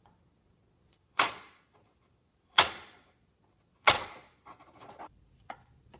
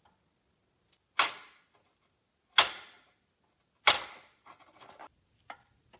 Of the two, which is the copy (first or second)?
first